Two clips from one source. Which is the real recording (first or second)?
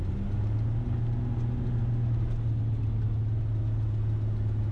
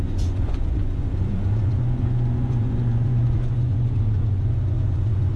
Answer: first